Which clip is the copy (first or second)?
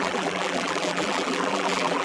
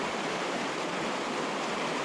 first